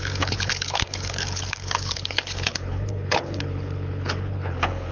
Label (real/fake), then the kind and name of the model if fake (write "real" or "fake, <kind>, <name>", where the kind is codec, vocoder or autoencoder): fake, codec, HILCodec